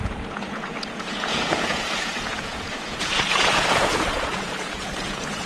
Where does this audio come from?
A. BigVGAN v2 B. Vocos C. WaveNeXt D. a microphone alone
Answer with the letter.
B